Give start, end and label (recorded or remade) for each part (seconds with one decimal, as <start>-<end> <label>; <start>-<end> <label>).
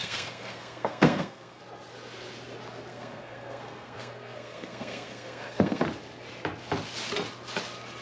0.0-1.6 remade; 1.6-2.9 recorded; 2.9-5.8 remade; 5.8-8.0 recorded